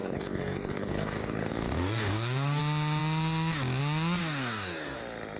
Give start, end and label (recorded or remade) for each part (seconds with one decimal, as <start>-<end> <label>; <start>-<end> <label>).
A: 0.0-2.6 remade; 2.6-4.2 recorded; 4.2-5.0 remade; 5.0-5.4 recorded